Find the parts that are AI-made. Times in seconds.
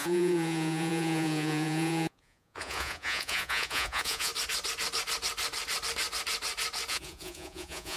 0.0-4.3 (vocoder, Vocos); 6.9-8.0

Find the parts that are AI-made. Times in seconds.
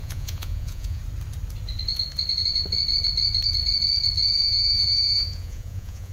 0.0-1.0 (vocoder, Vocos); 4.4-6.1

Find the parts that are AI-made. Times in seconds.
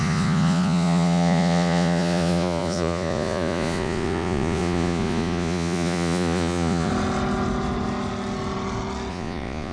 0.0-6.9 (vocoder, Vocos); 9.1-9.7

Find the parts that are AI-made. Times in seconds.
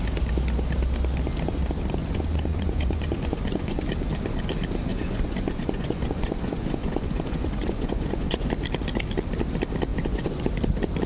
2.0-3.8 (vocoder, Vocos); 4.9-8.5; 9.9-10.5